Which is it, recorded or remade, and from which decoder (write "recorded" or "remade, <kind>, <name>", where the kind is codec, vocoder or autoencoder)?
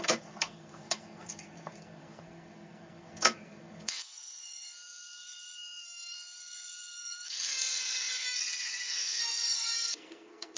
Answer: remade, codec, SNAC